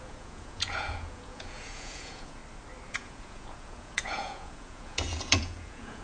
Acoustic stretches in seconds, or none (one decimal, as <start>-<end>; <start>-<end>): 2.4-2.9